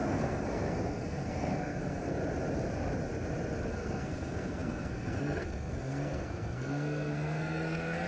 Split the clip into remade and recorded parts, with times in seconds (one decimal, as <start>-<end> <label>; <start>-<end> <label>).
0.0-2.2 remade; 2.2-3.7 recorded; 3.7-8.1 remade